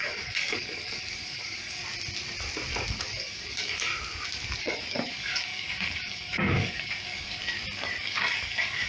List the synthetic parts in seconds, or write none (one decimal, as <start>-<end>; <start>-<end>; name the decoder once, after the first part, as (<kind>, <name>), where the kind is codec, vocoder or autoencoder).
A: 0.0-1.8 (codec, DAC); 3.0-3.9; 4.6-7.4; 8.0-8.9